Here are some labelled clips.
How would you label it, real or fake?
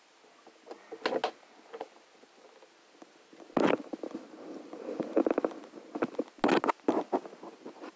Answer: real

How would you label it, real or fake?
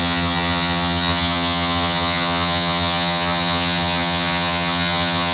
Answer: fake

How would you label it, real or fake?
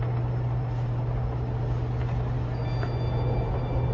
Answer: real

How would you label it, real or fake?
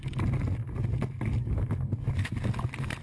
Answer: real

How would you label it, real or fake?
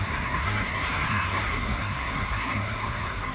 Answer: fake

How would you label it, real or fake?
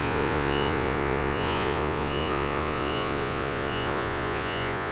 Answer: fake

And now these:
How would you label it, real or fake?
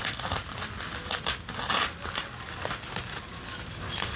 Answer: real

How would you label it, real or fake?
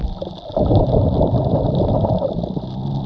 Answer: real